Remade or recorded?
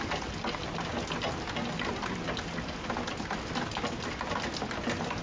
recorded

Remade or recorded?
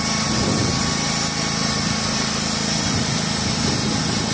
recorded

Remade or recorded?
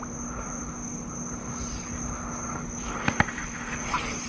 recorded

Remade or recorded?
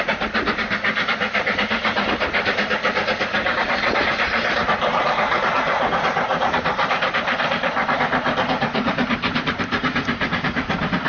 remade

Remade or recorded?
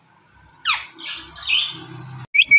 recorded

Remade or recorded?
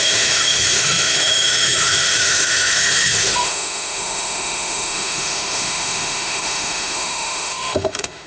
remade